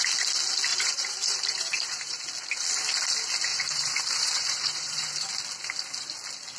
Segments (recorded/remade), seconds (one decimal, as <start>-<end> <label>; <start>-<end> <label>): 0.0-0.7 recorded; 0.7-2.2 remade; 2.2-3.5 recorded; 3.5-5.3 remade; 5.3-6.6 recorded

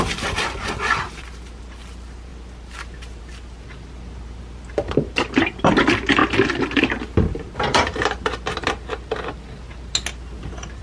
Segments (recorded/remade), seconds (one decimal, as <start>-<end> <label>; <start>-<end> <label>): 0.0-2.3 remade; 2.3-3.2 recorded; 3.2-6.2 remade; 6.2-6.8 recorded; 6.8-8.0 remade; 8.0-10.4 recorded; 10.4-10.8 remade

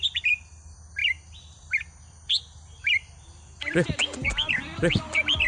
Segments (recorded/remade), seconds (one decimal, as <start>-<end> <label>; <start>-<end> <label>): 0.0-2.8 recorded; 2.8-5.5 remade

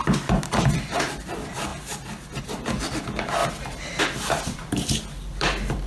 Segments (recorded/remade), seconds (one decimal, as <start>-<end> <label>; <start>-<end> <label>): 0.0-1.7 remade; 1.7-2.4 recorded; 2.4-3.4 remade; 3.4-4.0 recorded; 4.0-5.9 remade

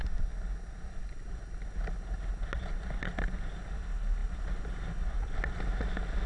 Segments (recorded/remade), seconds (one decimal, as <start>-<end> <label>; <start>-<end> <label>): 0.0-6.3 recorded

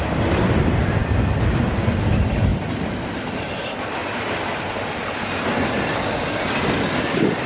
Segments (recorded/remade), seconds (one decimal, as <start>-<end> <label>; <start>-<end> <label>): 0.0-7.5 recorded

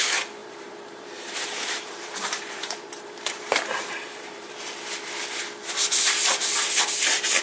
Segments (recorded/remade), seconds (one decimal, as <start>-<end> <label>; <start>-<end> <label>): 0.0-0.4 recorded; 0.4-4.8 remade; 4.8-7.4 recorded

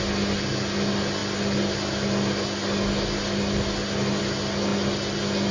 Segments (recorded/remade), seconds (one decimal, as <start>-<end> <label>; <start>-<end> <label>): 0.0-5.5 recorded